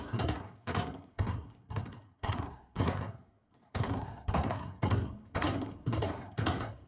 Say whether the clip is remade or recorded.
remade